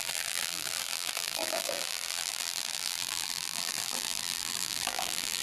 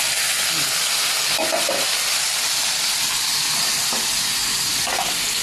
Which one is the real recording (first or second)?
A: second